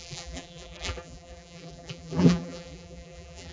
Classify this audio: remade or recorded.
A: remade